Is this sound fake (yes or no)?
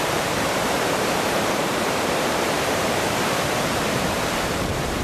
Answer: yes